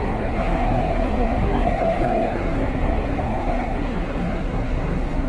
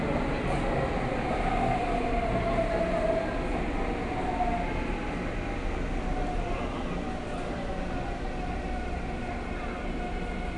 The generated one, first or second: first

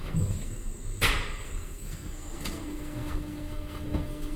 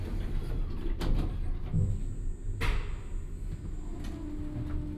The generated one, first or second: first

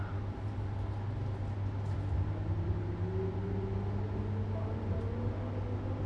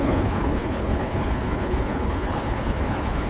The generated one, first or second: second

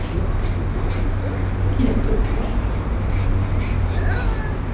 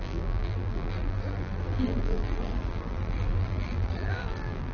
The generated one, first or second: second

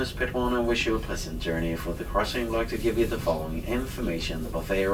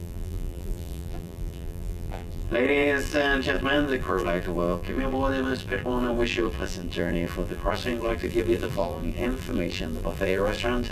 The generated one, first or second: second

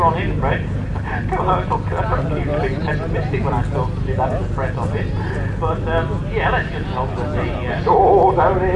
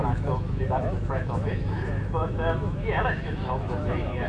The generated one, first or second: second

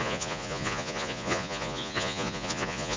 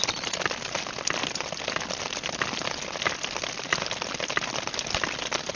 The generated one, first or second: first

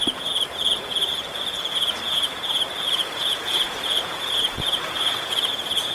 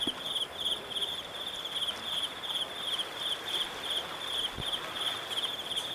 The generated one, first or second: first